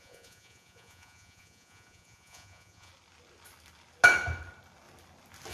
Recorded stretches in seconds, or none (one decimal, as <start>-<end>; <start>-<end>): 2.9-5.5